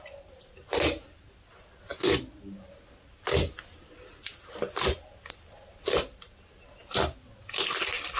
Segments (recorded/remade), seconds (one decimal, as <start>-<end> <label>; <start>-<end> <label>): 0.0-8.2 recorded